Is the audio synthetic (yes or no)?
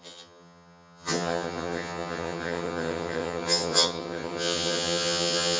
yes